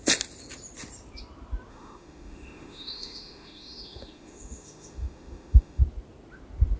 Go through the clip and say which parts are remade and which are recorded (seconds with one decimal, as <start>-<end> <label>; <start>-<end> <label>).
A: 0.0-1.7 recorded; 1.7-5.8 remade; 5.8-6.8 recorded

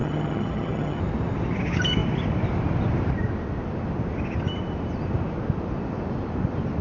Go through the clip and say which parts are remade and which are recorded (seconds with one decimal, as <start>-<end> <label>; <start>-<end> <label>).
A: 0.0-1.0 remade; 1.0-6.8 recorded

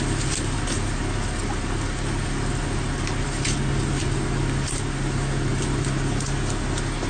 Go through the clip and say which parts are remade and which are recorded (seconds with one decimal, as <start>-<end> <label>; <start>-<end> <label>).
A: 0.0-7.1 recorded

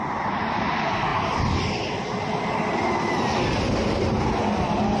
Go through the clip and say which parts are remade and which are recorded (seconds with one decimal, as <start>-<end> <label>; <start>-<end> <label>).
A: 0.0-5.0 recorded